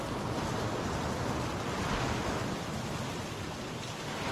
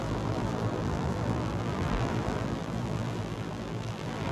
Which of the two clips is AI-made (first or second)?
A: second